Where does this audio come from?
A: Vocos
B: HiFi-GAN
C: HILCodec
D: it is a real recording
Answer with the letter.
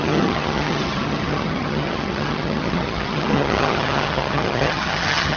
B